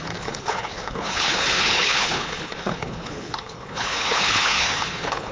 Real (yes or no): no